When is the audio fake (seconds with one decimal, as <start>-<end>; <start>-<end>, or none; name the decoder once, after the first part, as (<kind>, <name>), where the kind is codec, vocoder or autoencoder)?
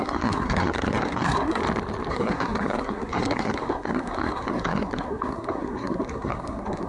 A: 0.0-1.6 (codec, SNAC); 2.1-6.9